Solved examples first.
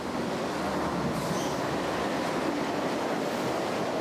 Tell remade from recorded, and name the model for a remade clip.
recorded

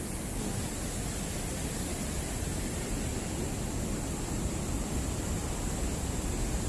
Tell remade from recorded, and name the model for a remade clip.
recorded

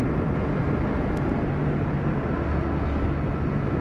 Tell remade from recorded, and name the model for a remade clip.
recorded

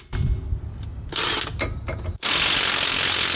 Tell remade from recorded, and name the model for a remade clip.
recorded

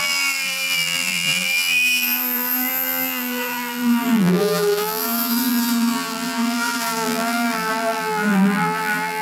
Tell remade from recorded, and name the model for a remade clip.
remade, vocoder, BigVGAN v2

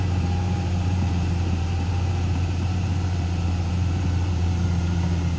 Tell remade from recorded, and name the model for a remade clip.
remade, vocoder, BigVGAN v2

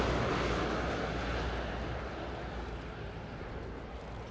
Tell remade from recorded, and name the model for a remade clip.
recorded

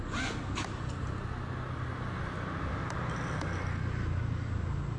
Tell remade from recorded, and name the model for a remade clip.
recorded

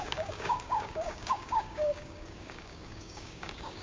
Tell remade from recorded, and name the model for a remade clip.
remade, codec, DAC